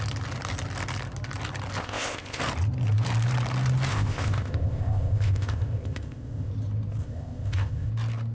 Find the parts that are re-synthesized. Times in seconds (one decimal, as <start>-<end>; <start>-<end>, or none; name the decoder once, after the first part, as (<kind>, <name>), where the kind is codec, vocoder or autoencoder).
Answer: 1.8-2.4 (codec, ZipCodec); 3.9-6.5; 7.0-7.9